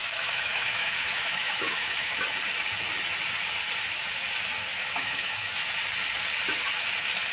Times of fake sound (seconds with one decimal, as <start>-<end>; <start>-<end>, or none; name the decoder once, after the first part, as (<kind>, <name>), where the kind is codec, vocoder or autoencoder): 0.0-2.1 (autoencoder, DAC-VAE); 4.7-5.7